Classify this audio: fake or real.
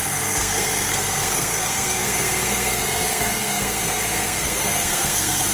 fake